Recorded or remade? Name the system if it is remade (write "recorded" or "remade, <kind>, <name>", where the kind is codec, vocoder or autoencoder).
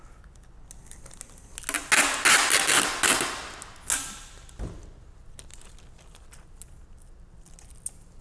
recorded